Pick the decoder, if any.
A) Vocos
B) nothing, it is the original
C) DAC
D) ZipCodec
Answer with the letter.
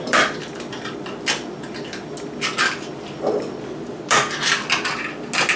B